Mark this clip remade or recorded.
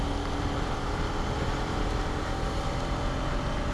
recorded